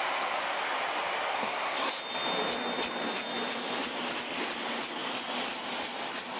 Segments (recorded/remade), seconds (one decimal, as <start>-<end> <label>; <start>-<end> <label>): 0.0-1.3 recorded; 1.3-1.9 remade; 1.9-6.4 recorded